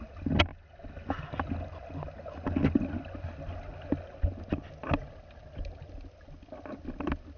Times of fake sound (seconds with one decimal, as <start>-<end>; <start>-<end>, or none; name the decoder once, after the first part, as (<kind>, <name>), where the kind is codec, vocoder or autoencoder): none